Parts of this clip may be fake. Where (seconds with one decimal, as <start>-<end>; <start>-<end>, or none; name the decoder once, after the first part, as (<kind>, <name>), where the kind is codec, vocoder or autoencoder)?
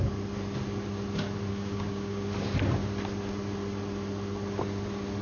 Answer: 1.5-2.3 (codec, DAC)